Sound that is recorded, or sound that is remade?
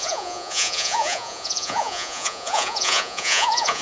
remade